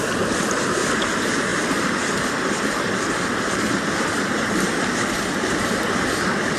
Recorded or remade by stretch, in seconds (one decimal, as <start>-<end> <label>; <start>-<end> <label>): 0.0-6.6 recorded

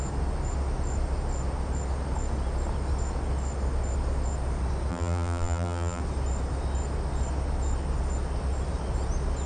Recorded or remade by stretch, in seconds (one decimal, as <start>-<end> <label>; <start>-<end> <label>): 0.0-4.9 recorded; 4.9-6.0 remade; 6.0-9.5 recorded

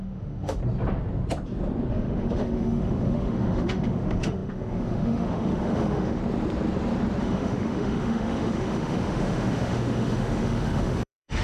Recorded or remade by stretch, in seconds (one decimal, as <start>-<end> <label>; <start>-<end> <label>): 0.0-0.6 remade; 0.6-1.9 recorded; 1.9-6.2 remade; 6.2-7.2 recorded; 7.2-11.4 remade

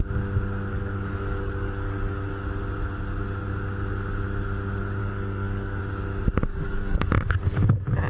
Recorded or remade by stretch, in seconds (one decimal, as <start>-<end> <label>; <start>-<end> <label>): 0.0-0.7 recorded; 0.7-2.4 remade; 2.4-5.0 recorded; 5.0-5.8 remade; 5.8-6.5 recorded; 6.5-7.1 remade; 7.1-8.1 recorded

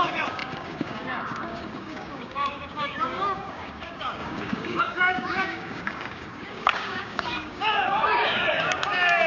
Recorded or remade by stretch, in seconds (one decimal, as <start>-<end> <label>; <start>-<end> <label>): 0.0-9.3 remade